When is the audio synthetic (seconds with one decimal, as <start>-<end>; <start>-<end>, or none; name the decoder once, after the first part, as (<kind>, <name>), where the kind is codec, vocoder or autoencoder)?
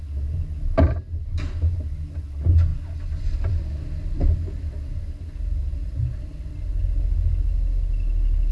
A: none